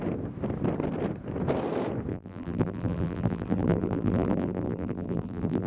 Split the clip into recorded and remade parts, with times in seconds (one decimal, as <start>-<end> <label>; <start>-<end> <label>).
0.0-2.1 recorded; 2.1-5.7 remade